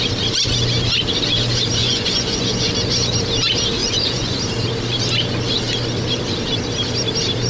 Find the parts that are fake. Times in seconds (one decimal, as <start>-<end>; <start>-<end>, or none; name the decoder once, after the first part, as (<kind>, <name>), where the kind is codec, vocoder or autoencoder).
1.8-2.7 (vocoder, Vocos); 3.8-4.4